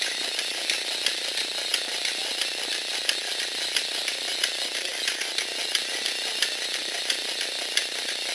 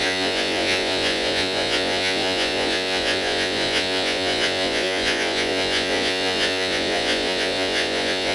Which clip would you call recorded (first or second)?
first